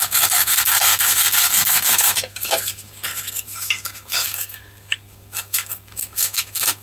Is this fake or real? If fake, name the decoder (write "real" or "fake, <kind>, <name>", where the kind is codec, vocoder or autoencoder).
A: fake, codec, SNAC